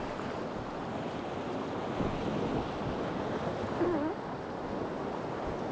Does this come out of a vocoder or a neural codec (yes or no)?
no